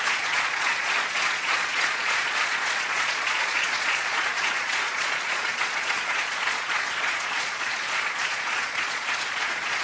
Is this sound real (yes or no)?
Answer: no